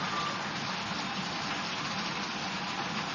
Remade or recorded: recorded